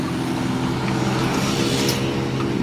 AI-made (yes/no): no